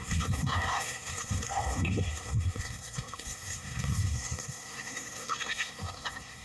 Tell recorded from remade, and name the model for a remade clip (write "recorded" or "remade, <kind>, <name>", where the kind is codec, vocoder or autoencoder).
remade, codec, SNAC